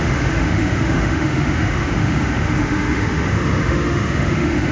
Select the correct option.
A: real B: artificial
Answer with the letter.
B